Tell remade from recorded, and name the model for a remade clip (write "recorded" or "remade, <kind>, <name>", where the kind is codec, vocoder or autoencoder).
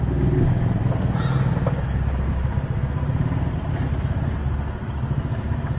recorded